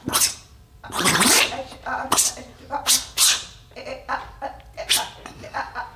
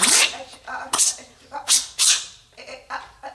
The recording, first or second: first